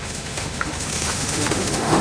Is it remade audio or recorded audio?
remade